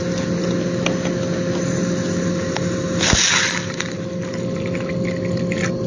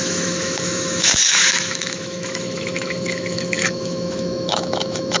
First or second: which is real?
first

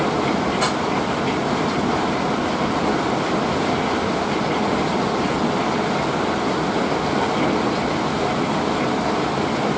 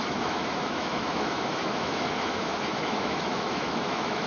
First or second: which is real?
first